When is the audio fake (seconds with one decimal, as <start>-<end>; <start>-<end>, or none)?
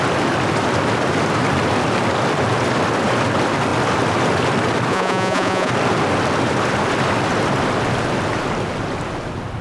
4.9-5.7